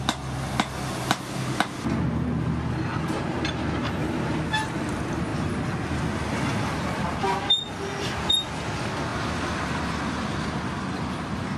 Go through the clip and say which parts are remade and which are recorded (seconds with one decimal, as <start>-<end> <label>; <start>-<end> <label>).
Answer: 0.0-11.6 recorded